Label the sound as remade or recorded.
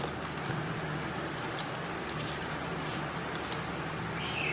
recorded